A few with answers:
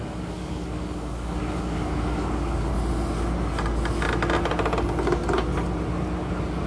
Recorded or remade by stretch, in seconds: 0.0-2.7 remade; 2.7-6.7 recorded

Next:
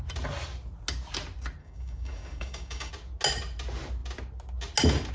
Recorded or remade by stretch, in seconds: 0.0-1.6 recorded; 1.6-2.9 remade; 2.9-5.1 recorded

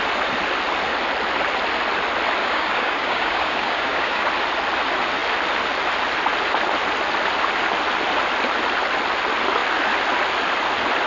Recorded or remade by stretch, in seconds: 0.0-2.4 recorded; 2.4-4.3 remade; 4.3-11.1 recorded

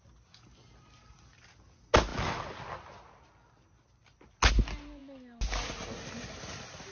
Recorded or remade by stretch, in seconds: 0.0-6.9 recorded